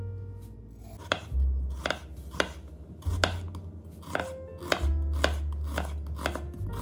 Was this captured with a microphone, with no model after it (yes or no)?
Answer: yes